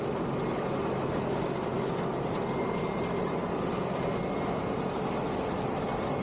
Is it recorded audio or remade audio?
recorded